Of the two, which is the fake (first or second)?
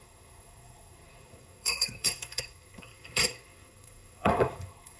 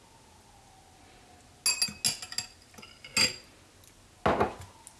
first